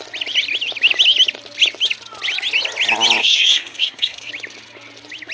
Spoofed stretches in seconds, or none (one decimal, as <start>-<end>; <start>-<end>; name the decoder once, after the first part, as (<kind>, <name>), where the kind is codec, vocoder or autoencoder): 3.2-4.3 (codec, SNAC)